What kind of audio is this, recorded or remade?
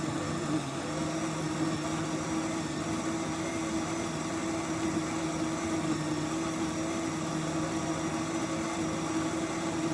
recorded